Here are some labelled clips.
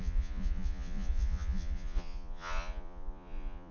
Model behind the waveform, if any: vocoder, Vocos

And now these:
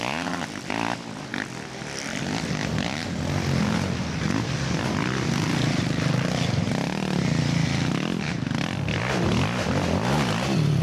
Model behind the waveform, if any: none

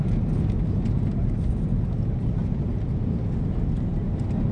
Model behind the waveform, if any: none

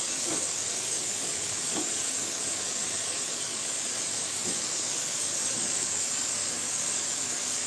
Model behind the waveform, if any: codec, DAC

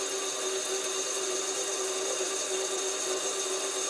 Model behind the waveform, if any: none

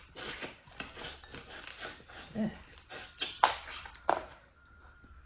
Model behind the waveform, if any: none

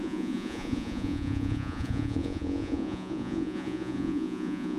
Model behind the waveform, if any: vocoder, Vocos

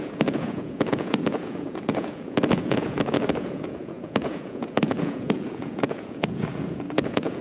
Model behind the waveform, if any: vocoder, Vocos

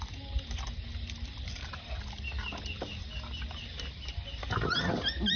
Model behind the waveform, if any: none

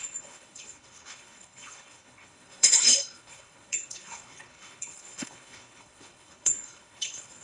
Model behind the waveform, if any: codec, HILCodec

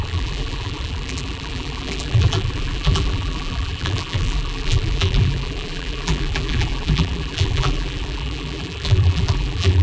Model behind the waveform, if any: vocoder, BigVGAN v2